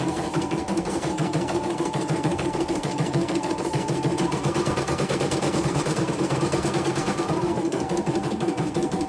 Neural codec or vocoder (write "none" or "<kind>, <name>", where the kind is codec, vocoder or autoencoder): codec, SNAC